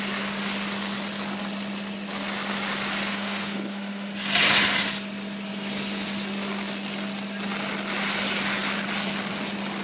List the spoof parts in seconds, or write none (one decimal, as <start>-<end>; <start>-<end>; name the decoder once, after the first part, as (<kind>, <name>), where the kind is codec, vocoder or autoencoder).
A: 3.1-4.1 (autoencoder, DAC-VAE)